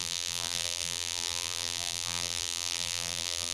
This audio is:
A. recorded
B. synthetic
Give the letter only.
B